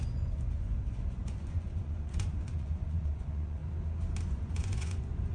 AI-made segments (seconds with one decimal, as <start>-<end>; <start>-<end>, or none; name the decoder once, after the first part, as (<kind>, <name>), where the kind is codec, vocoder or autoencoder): 0.0-3.6 (vocoder, Vocos); 4.2-5.3